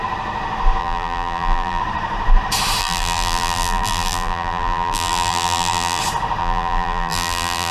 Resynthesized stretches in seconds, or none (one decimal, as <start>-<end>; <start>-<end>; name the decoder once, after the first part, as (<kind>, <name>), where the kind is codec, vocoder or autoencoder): 0.8-1.8 (vocoder, BigVGAN v2); 2.8-6.0; 6.4-7.7